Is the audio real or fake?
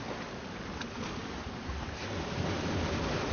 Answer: real